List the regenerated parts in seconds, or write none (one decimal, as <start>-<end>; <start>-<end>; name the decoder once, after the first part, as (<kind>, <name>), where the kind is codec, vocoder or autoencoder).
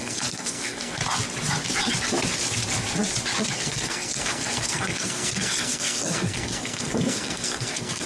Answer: 0.0-1.0 (codec, SNAC); 3.5-8.1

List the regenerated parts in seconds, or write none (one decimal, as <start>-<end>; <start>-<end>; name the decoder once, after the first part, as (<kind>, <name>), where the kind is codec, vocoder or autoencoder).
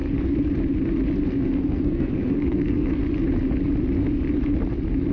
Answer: 1.3-3.0 (codec, SNAC)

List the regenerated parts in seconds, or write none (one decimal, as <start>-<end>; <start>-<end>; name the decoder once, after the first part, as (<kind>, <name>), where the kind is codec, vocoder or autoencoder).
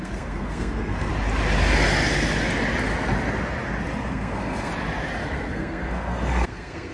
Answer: 0.0-1.1 (codec, SNAC); 4.1-4.7; 5.2-6.9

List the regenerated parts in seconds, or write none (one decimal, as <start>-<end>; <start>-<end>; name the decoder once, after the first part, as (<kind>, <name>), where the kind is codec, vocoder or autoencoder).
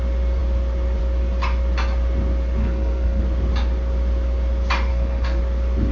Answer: 2.6-3.2 (codec, SNAC); 4.9-5.4